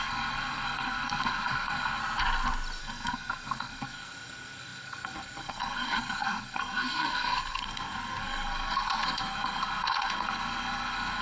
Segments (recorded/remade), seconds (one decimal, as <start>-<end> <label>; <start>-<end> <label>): 0.0-2.0 remade; 2.0-2.8 recorded; 2.8-11.2 remade